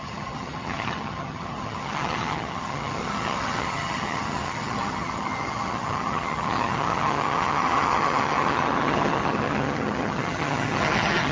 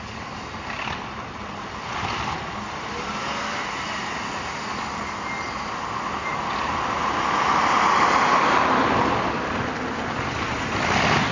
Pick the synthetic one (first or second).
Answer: first